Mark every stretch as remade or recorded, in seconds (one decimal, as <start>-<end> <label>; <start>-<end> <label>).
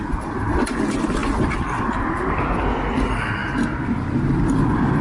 0.0-5.0 recorded